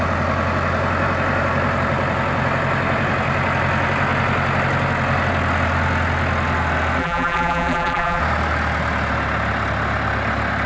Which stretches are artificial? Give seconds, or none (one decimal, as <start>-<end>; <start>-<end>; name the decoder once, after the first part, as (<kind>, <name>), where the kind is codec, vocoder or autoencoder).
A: 7.0-8.2 (vocoder, BigVGAN v2)